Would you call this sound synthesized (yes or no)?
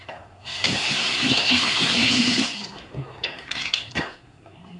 yes